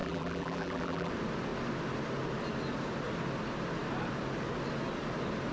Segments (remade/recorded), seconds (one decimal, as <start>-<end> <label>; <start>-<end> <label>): 0.0-1.1 remade; 1.1-5.5 recorded